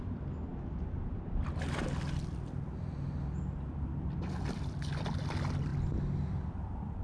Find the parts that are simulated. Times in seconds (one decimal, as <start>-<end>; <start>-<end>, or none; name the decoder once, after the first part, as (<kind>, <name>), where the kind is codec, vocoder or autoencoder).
none